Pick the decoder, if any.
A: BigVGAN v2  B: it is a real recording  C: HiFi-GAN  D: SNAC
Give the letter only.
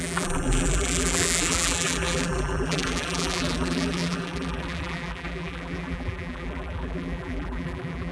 A